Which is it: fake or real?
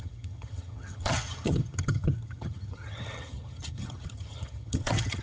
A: fake